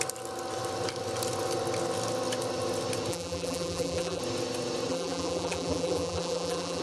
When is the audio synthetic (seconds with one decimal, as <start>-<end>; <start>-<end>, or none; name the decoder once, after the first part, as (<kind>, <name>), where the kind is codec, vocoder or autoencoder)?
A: 3.1-4.2 (vocoder, BigVGAN v2); 4.9-6.8